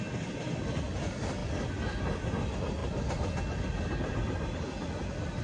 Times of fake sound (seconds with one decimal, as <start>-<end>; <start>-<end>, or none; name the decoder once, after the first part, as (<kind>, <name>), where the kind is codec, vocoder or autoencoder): none